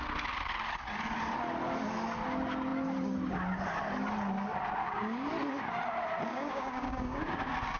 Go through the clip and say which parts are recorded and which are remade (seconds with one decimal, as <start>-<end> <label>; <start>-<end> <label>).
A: 0.0-4.8 recorded; 4.8-5.3 remade; 5.3-6.3 recorded; 6.3-7.2 remade; 7.2-7.8 recorded